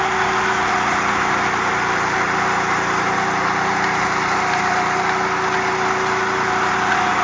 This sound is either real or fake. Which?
real